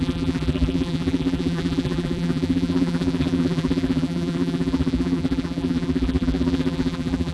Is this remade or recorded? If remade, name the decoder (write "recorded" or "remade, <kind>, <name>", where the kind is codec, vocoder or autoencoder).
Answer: remade, vocoder, BigVGAN v2